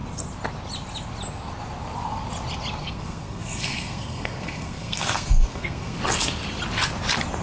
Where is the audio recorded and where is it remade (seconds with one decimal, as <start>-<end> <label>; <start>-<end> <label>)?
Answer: 0.0-2.8 recorded; 2.8-6.0 remade; 6.0-7.4 recorded

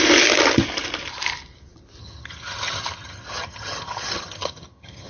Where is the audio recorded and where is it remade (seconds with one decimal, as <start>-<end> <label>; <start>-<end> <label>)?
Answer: 0.0-2.0 recorded; 2.0-5.1 remade

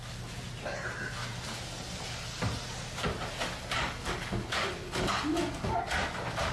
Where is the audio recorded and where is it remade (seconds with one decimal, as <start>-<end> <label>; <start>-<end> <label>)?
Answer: 0.0-3.6 recorded; 3.6-5.8 remade; 5.8-6.5 recorded